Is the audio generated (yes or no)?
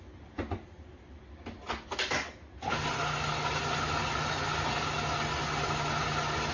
no